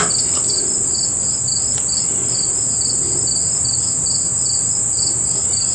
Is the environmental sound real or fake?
real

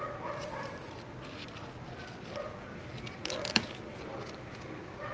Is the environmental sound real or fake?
real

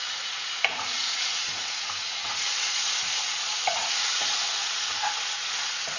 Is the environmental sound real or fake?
fake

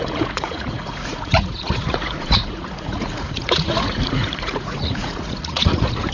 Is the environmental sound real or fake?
fake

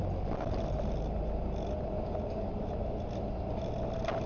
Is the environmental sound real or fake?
real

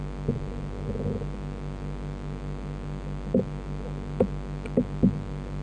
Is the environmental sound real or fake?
real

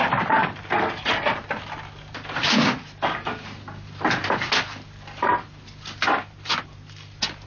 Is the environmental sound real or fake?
real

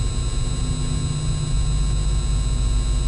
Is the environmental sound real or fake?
real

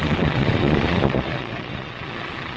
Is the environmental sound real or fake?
fake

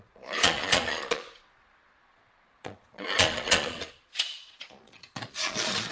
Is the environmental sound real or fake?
fake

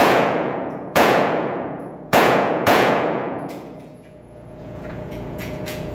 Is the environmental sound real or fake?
fake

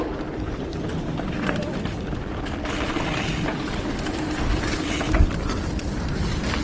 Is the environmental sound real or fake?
real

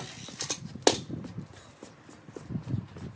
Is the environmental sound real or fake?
real